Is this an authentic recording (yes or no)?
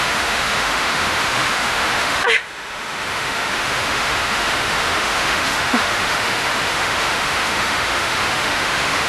no